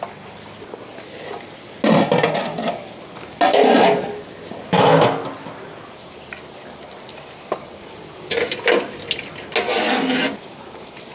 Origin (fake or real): real